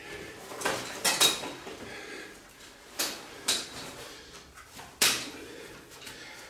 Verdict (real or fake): fake